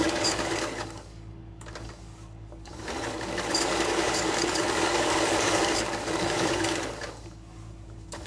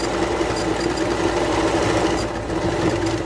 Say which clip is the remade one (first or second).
first